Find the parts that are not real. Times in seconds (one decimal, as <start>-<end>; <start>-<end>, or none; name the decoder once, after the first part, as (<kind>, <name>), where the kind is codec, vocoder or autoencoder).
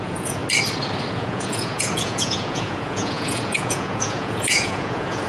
0.0-0.4 (vocoder, Vocos); 1.1-5.3